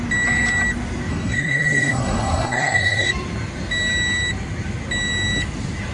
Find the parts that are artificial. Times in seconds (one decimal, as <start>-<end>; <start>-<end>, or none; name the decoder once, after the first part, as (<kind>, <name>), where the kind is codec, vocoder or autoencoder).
1.1-3.1 (codec, SNAC)

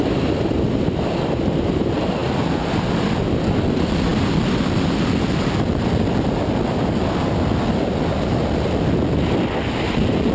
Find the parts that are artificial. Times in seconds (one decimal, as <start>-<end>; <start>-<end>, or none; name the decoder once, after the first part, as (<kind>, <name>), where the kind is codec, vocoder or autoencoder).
none

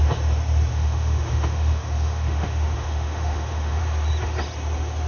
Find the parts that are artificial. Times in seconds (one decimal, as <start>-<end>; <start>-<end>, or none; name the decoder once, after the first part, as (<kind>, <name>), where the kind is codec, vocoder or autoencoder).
0.7-3.8 (autoencoder, DAC-VAE)

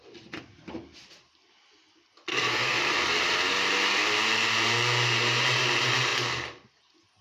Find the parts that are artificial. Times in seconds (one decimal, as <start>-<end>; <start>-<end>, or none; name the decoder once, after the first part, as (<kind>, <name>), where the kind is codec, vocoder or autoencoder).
2.3-2.8 (codec, SNAC)